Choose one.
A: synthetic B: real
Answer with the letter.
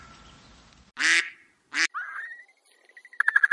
B